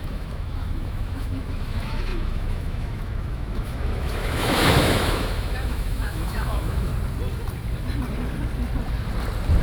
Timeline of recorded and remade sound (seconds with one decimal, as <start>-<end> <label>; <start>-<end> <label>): 0.0-6.9 remade; 6.9-9.6 recorded